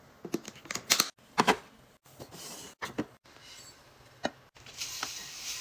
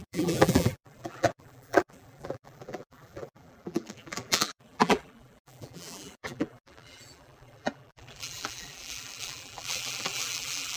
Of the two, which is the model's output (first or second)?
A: second